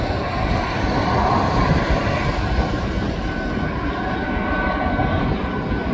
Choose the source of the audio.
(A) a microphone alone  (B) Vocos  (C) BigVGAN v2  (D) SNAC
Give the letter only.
A